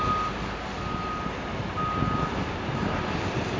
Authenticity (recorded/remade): recorded